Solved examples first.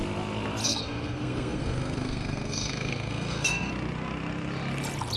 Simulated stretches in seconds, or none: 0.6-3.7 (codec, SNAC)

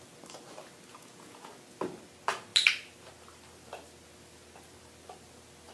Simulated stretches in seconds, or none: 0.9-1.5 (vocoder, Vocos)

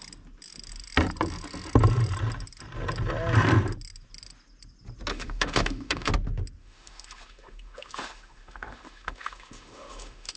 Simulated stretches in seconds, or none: 5.1-6.1 (autoencoder, DAC-VAE); 6.6-10.4